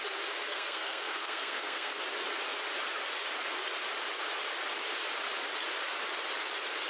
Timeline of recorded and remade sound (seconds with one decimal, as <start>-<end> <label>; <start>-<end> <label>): 0.0-0.5 recorded; 0.5-2.0 remade; 2.0-6.9 recorded